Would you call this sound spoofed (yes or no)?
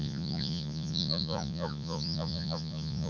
yes